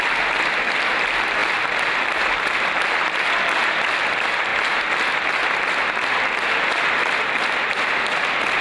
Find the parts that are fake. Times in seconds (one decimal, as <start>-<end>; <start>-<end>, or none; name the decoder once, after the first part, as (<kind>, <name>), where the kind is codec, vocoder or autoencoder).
0.0-4.5 (vocoder, BigVGAN v2); 7.2-8.6